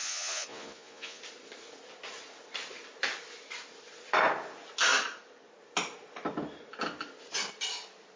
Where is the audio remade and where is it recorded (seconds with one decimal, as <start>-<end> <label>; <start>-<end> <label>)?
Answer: 0.0-1.2 remade; 1.2-8.2 recorded

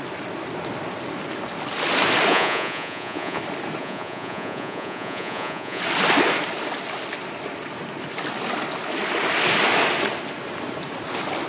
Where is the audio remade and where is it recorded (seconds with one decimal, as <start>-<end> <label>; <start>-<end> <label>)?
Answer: 0.0-2.3 recorded; 2.3-3.4 remade; 3.4-3.8 recorded; 3.8-5.8 remade; 5.8-11.5 recorded

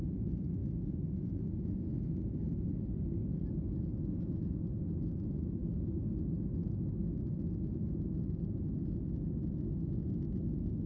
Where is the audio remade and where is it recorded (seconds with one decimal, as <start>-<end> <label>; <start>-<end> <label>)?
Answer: 0.0-0.6 recorded; 0.6-2.7 remade; 2.7-10.9 recorded

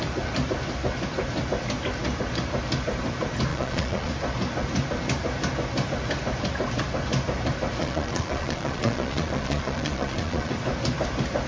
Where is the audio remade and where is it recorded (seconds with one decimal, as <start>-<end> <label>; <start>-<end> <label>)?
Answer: 0.0-3.5 recorded; 3.5-4.1 remade; 4.1-7.8 recorded; 7.8-10.5 remade; 10.5-11.5 recorded